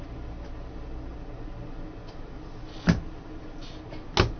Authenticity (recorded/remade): recorded